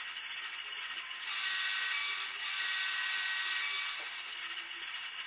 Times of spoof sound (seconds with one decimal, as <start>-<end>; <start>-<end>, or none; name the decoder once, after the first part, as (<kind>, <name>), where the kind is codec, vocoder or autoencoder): none

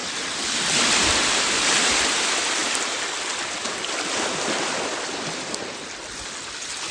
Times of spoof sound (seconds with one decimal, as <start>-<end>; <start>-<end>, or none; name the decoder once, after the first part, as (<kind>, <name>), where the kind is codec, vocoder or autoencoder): 0.0-2.1 (vocoder, BigVGAN v2); 2.6-3.5

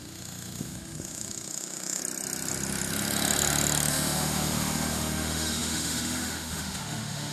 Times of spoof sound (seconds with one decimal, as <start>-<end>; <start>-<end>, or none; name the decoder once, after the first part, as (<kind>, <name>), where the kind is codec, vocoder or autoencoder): 0.0-2.0 (autoencoder, DAC-VAE); 3.9-7.3